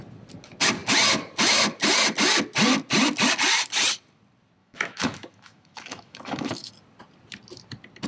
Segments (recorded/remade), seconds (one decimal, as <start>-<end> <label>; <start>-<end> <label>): 0.0-4.6 recorded; 4.6-6.7 remade; 6.7-8.1 recorded